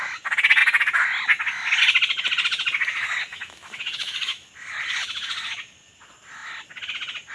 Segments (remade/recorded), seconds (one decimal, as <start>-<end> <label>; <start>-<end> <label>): 0.0-3.3 recorded; 3.3-4.5 remade; 4.5-7.3 recorded